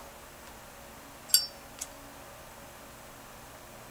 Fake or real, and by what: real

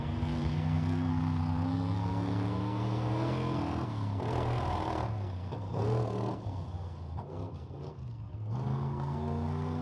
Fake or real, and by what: fake, codec, SNAC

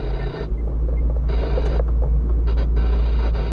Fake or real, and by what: real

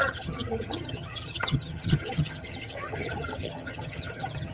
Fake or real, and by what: fake, vocoder, HiFi-GAN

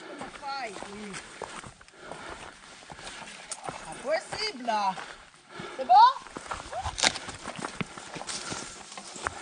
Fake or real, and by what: fake, vocoder, BigVGAN v2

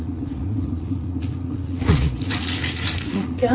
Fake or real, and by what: fake, vocoder, Vocos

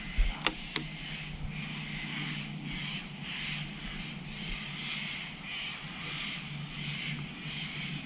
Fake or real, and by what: real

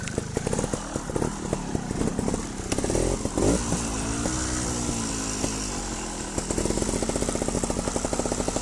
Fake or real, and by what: real